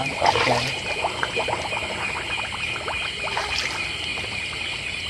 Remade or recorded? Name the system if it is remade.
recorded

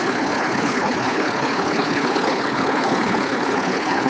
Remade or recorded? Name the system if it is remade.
remade, codec, HILCodec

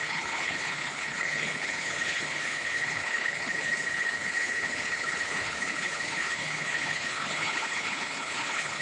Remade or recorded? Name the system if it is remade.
remade, codec, HILCodec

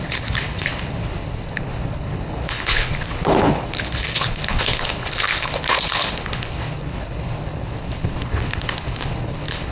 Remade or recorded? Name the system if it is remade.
remade, codec, HILCodec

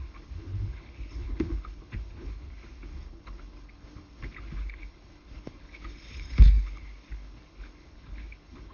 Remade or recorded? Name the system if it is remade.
remade, codec, HILCodec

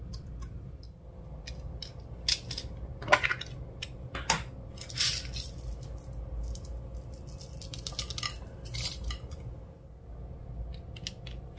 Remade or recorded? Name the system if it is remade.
recorded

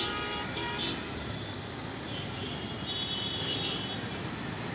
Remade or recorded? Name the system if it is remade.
recorded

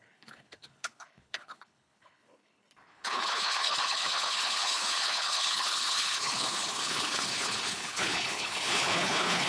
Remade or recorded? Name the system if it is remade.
remade, codec, HILCodec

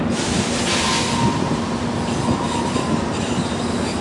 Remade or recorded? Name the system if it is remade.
recorded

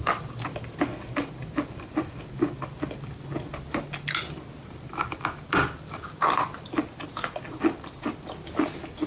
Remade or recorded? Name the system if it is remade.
recorded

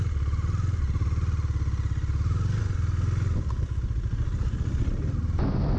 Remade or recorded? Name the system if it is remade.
recorded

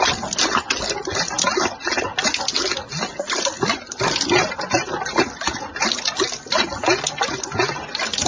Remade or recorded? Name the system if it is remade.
recorded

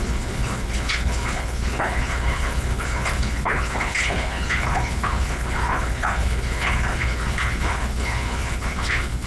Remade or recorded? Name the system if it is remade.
remade, codec, HILCodec